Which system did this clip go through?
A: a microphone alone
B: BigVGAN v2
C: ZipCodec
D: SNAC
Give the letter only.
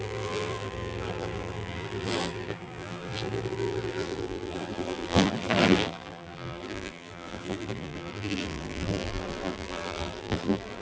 B